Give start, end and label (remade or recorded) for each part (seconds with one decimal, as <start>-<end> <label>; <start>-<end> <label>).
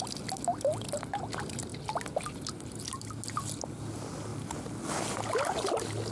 0.0-6.1 recorded